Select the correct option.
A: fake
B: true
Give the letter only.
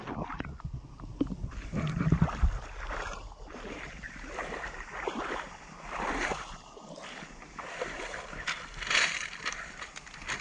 B